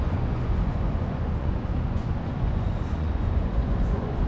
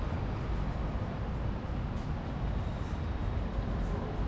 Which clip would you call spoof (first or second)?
first